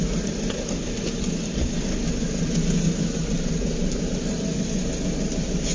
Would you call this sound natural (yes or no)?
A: yes